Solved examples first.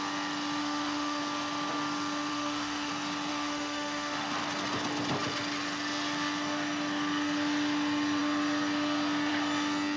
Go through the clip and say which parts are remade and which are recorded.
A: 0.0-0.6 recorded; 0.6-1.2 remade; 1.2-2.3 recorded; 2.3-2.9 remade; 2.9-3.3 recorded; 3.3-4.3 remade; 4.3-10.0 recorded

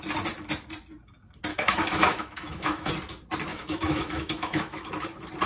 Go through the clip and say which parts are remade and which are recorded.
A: 0.0-1.5 recorded; 1.5-2.9 remade; 2.9-3.5 recorded; 3.5-4.9 remade; 4.9-5.5 recorded

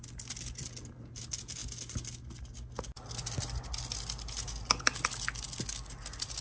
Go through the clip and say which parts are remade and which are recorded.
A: 0.0-6.4 recorded